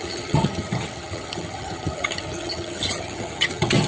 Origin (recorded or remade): remade